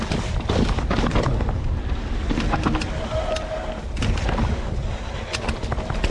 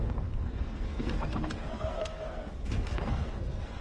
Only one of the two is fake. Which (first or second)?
second